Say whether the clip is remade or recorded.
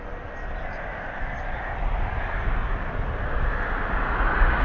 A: recorded